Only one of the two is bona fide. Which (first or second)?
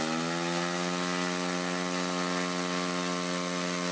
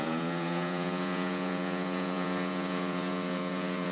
first